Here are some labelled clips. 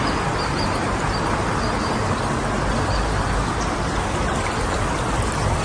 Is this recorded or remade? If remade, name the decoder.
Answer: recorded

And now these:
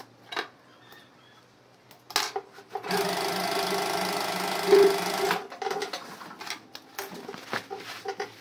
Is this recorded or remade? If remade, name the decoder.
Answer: recorded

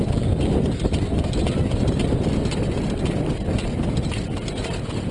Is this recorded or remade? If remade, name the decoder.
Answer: recorded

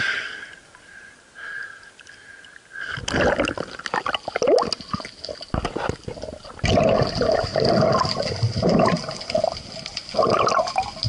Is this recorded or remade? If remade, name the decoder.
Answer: recorded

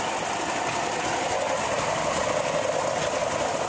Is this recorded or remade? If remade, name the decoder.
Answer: recorded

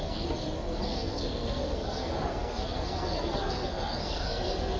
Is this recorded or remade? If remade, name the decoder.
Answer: remade, codec, SNAC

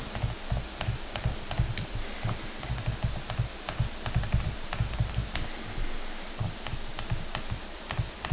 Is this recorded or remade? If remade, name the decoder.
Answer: recorded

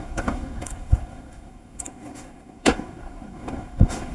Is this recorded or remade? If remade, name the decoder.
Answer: remade, codec, SNAC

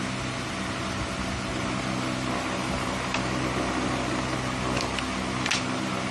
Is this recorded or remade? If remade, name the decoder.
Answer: recorded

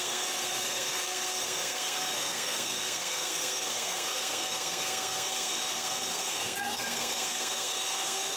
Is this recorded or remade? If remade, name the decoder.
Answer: remade, codec, SNAC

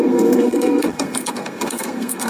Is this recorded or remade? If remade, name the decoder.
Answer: remade, codec, SNAC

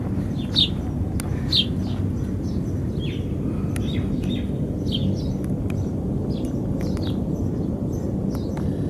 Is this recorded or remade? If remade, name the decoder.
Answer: recorded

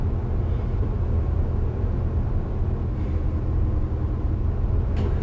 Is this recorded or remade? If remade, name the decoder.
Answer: recorded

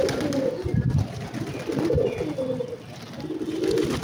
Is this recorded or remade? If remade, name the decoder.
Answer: recorded